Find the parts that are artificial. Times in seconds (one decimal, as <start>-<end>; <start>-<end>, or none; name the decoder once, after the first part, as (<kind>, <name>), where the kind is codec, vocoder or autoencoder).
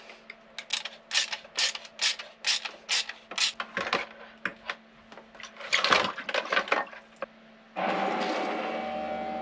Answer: none